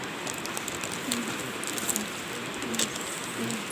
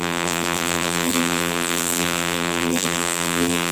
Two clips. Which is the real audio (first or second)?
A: first